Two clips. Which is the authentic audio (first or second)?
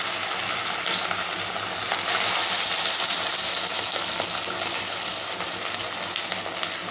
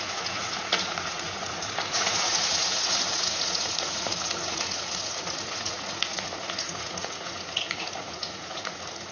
first